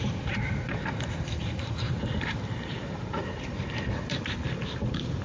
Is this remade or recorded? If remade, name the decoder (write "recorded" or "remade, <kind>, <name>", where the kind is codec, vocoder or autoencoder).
remade, vocoder, BigVGAN v2